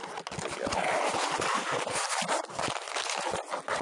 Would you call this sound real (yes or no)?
yes